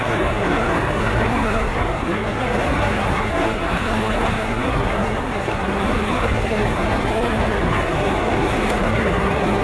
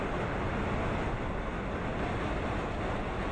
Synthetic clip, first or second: first